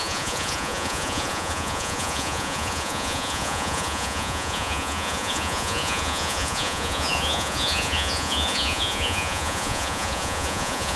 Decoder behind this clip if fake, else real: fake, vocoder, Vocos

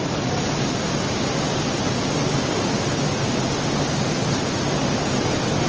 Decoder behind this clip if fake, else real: real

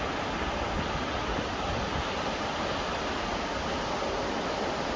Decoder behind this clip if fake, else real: real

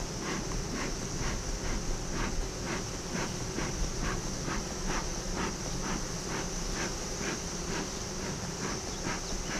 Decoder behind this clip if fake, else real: real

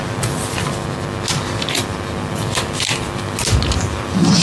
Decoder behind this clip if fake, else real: real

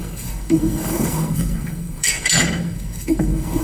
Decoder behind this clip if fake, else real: fake, codec, SNAC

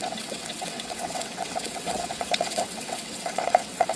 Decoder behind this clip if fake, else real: fake, vocoder, WaveNeXt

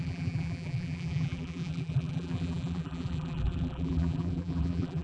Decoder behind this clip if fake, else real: fake, vocoder, BigVGAN v2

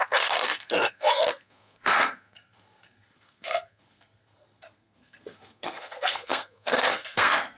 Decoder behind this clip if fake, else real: fake, codec, SNAC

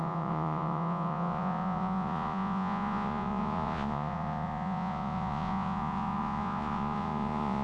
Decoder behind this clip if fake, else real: fake, vocoder, Vocos